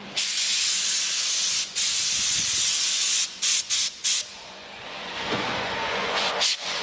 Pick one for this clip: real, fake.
fake